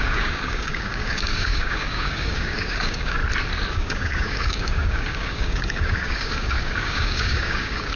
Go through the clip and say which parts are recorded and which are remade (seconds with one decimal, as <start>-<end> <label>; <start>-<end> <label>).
0.0-3.2 remade; 3.2-3.7 recorded; 3.7-8.0 remade